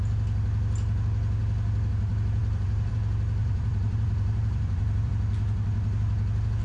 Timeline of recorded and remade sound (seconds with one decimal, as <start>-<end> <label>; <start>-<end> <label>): 0.0-2.4 recorded; 2.4-2.9 remade; 2.9-3.4 recorded; 3.4-5.1 remade; 5.1-6.6 recorded